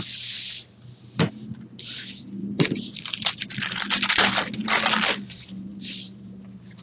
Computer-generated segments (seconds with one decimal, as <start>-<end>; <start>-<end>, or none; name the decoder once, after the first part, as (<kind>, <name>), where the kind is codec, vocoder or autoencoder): 2.4-3.3 (vocoder, BigVGAN v2); 5.7-6.3